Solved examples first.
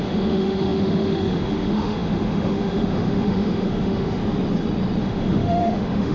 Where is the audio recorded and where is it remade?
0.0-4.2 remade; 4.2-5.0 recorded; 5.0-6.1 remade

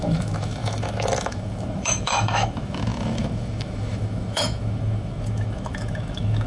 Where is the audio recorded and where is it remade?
0.0-6.5 remade

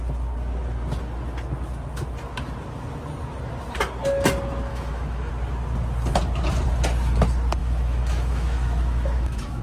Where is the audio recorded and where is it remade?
0.0-4.7 recorded; 4.7-5.3 remade; 5.3-7.6 recorded; 7.6-9.6 remade

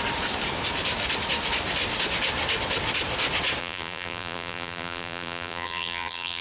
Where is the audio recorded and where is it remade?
0.0-3.6 recorded; 3.6-6.4 remade

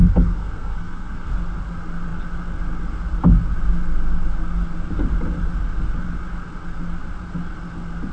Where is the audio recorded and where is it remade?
0.0-1.3 remade; 1.3-8.1 recorded

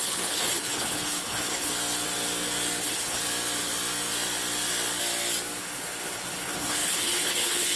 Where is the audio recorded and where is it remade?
0.0-1.7 remade; 1.7-2.8 recorded; 2.8-3.2 remade; 3.2-5.6 recorded; 5.6-7.8 remade

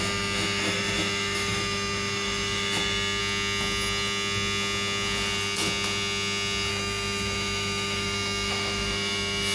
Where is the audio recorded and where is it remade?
0.0-3.2 remade; 3.2-6.7 recorded; 6.7-9.5 remade

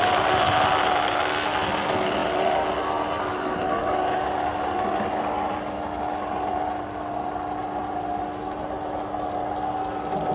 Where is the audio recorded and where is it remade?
0.0-10.3 recorded